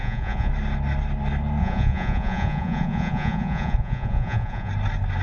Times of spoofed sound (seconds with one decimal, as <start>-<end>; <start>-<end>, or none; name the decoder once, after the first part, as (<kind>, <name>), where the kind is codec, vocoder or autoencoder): 0.0-0.5 (vocoder, Vocos); 1.6-4.7